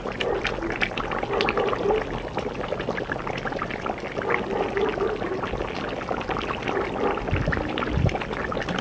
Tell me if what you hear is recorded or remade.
recorded